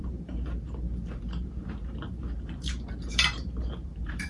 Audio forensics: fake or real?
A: fake